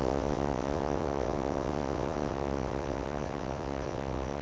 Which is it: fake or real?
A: fake